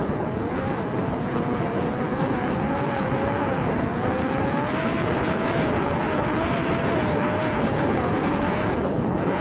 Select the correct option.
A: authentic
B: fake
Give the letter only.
B